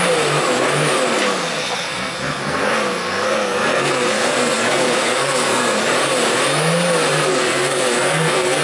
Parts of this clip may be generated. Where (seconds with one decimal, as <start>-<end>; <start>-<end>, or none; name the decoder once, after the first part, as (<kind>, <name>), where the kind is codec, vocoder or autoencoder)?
1.5-5.8 (codec, SNAC); 7.3-8.6